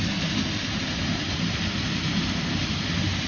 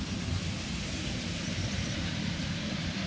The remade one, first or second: second